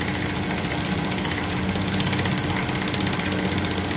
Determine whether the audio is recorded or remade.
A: recorded